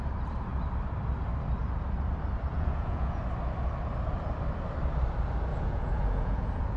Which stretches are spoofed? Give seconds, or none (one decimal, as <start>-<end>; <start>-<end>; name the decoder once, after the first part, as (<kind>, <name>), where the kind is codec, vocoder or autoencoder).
2.5-3.2 (vocoder, Vocos); 5.5-6.8